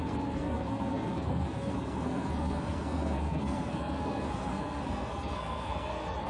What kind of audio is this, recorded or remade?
remade